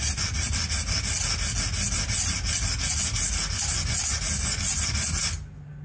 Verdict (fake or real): real